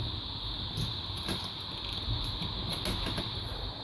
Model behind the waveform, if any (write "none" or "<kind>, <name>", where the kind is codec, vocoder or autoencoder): none